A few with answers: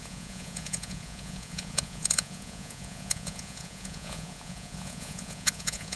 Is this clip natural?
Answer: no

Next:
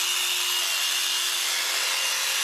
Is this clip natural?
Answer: yes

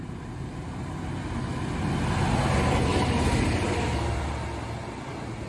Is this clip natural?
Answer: yes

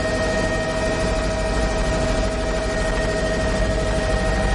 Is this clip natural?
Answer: yes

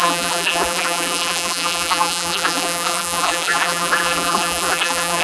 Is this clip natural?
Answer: no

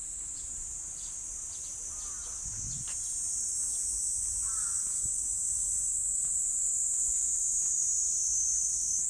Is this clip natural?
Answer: yes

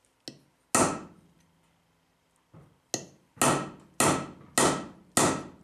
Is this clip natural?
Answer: yes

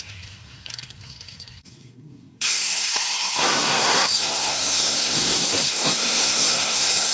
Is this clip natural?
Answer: no